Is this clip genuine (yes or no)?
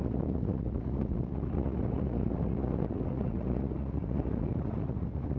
no